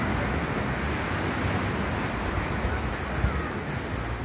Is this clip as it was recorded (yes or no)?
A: yes